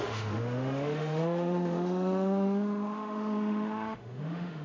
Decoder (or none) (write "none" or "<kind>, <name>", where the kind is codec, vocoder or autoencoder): autoencoder, DAC-VAE